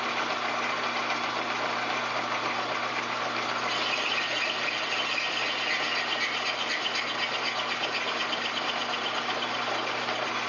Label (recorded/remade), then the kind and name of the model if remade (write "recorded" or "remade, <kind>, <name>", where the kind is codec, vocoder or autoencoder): recorded